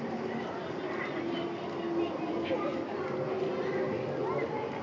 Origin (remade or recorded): recorded